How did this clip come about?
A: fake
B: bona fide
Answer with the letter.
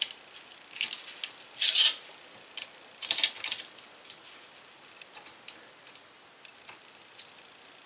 B